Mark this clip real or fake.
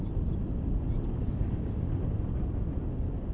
real